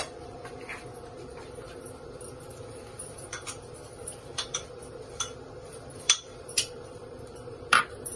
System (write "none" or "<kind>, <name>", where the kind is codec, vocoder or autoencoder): vocoder, BigVGAN v2